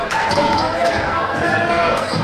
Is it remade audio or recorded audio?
remade